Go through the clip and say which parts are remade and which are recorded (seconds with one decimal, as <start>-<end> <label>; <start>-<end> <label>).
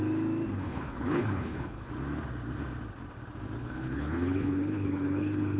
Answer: 0.0-0.5 recorded; 0.5-1.9 remade; 1.9-3.6 recorded; 3.6-5.6 remade